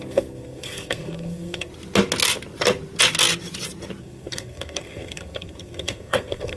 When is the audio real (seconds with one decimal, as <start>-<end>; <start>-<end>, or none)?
1.7-4.0